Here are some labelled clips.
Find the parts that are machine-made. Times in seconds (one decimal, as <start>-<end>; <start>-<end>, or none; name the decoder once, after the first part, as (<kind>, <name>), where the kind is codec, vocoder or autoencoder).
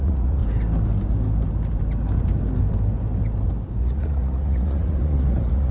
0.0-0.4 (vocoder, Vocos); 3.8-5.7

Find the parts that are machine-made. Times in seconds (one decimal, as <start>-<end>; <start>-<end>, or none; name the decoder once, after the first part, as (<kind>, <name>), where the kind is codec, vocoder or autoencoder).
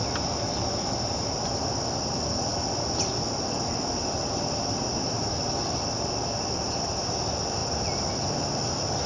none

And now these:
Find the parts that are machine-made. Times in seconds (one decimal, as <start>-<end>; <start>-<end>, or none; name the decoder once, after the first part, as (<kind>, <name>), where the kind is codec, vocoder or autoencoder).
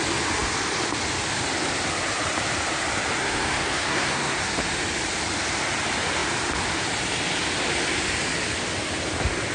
3.2-4.4 (codec, SNAC)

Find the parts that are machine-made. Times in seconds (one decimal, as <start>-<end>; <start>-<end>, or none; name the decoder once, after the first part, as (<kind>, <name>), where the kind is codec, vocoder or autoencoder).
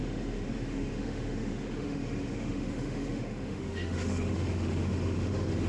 0.0-5.7 (autoencoder, DAC-VAE)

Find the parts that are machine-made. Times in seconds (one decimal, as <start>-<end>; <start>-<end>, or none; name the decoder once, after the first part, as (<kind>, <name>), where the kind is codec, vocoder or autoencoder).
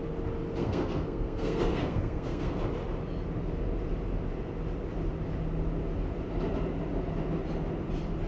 0.6-2.6 (codec, SNAC)